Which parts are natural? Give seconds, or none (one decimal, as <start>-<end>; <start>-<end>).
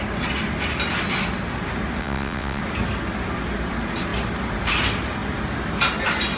0.0-2.0; 2.6-6.4